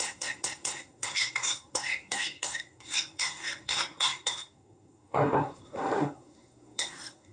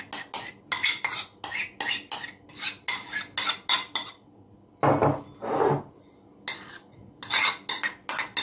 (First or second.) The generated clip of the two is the first